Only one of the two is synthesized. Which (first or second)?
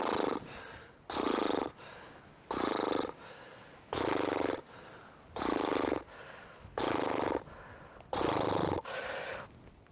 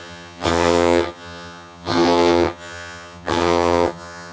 second